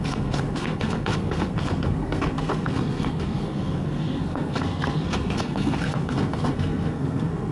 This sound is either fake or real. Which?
fake